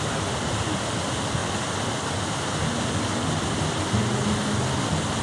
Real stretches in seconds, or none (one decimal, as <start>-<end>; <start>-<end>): 0.0-5.2